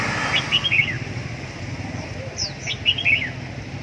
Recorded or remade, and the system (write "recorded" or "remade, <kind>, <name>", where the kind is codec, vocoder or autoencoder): recorded